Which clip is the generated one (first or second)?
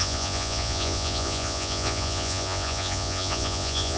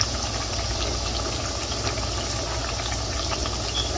first